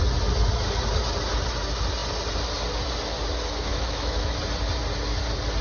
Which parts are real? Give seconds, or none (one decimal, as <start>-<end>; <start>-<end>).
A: 0.0-3.7; 4.4-5.6